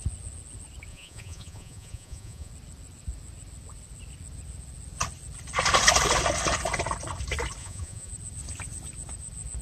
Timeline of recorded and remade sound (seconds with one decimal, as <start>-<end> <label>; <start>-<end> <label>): 0.0-0.9 recorded; 0.9-2.5 remade; 2.5-7.6 recorded; 7.6-8.1 remade; 8.1-9.6 recorded